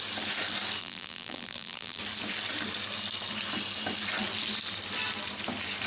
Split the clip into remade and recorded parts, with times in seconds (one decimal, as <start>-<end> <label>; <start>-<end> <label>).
0.0-0.8 recorded; 0.8-2.0 remade; 2.0-5.9 recorded